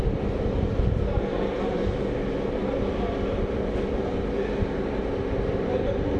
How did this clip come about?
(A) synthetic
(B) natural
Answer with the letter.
B